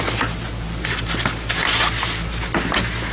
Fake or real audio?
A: real